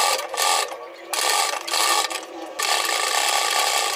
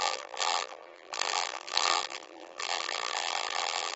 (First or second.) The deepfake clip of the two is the second